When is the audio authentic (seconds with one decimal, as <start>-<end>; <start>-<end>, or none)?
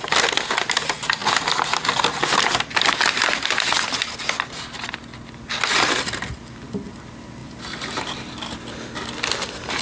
0.0-1.2; 4.0-7.4; 8.6-9.8